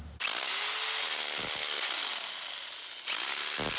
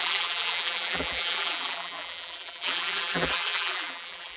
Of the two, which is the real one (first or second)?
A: first